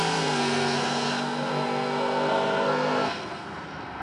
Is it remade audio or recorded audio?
remade